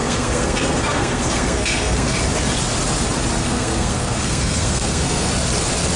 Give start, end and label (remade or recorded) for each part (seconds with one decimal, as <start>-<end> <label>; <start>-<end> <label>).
0.0-2.2 remade; 2.2-3.4 recorded; 3.4-5.3 remade; 5.3-6.0 recorded